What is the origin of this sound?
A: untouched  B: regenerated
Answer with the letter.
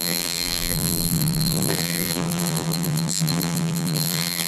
B